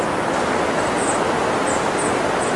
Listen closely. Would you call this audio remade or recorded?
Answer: recorded